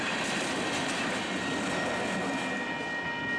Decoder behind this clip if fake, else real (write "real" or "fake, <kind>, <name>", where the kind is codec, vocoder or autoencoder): real